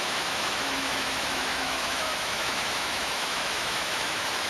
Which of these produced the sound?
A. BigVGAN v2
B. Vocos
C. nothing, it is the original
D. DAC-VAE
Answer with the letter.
D